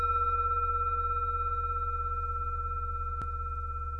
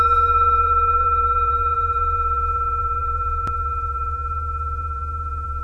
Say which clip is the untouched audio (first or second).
first